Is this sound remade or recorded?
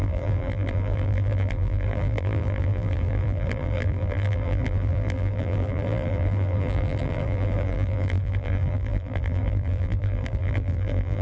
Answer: remade